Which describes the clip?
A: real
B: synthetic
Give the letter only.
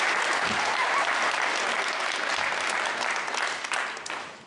A